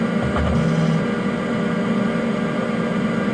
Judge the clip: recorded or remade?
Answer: recorded